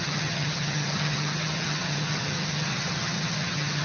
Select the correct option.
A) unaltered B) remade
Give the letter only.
B